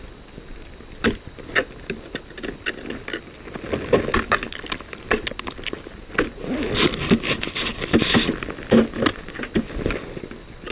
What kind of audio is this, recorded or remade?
recorded